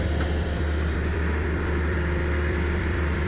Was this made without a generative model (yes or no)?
no